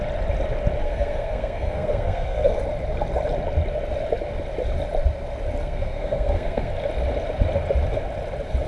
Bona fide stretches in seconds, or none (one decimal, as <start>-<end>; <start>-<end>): 0.0-0.8; 2.6-5.6; 6.7-8.7

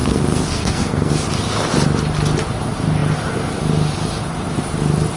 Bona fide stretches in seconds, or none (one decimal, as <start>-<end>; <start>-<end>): 1.1-5.2

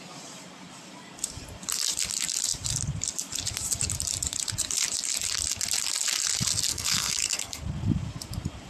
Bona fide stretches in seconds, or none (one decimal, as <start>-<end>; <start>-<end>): 0.0-6.7; 7.6-8.7

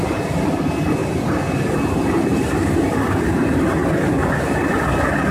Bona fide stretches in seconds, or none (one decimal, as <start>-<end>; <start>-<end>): 0.0-5.3

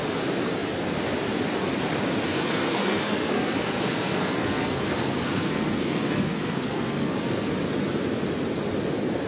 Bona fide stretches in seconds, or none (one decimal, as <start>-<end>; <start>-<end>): 0.0-2.3; 7.5-9.3